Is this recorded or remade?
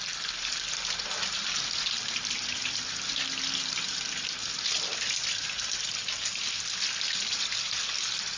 recorded